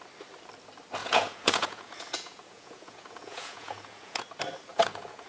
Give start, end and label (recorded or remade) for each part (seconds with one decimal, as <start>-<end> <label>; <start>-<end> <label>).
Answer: 0.0-1.0 recorded; 1.0-4.2 remade; 4.2-4.7 recorded; 4.7-5.3 remade